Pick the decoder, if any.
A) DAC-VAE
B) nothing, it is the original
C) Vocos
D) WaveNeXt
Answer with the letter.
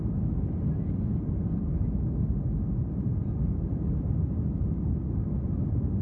B